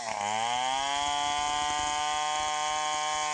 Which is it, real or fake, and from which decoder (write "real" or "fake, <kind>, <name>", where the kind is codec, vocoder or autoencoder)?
real